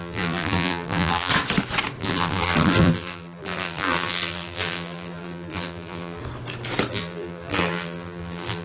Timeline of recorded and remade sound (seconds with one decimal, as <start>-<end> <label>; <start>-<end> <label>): 0.0-1.3 remade; 1.3-2.0 recorded; 2.0-6.2 remade; 6.2-6.9 recorded; 6.9-8.6 remade